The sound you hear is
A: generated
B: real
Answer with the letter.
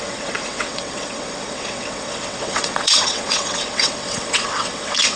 A